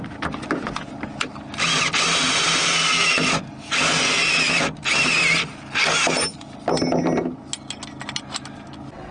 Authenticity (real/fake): real